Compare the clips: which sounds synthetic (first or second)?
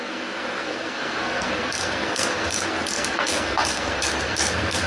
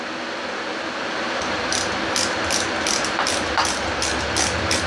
first